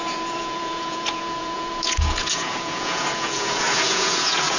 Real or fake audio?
fake